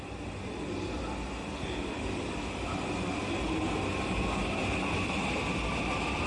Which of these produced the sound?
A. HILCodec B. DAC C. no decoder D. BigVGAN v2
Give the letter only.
C